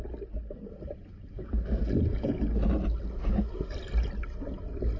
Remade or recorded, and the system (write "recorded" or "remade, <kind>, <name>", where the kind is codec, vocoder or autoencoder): recorded